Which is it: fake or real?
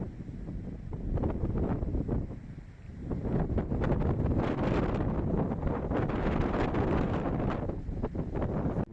real